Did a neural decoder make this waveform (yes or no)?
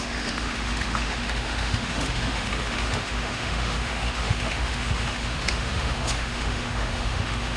yes